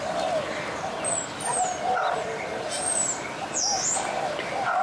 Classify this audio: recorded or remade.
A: recorded